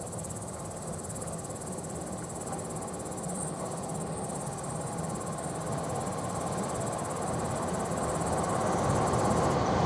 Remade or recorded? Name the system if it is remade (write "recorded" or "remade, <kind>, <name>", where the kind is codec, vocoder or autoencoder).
recorded